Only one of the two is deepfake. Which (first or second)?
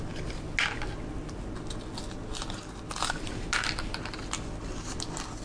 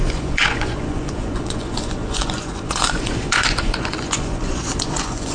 second